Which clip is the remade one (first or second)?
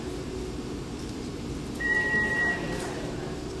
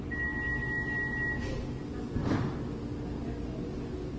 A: first